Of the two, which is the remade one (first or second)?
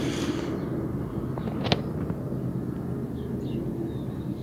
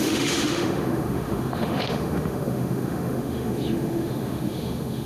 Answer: second